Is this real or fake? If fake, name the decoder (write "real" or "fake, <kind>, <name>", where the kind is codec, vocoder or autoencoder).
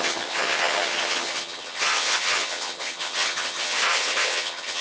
fake, vocoder, HiFi-GAN